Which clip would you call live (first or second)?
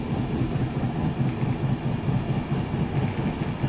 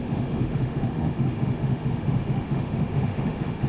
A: first